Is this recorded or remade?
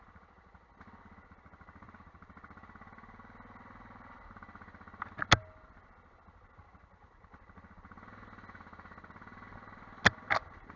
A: recorded